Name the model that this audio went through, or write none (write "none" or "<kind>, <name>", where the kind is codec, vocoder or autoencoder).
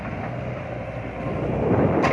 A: none